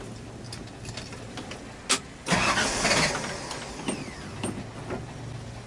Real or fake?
real